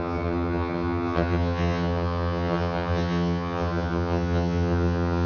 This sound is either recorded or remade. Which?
remade